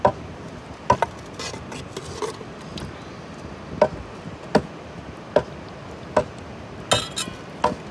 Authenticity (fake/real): real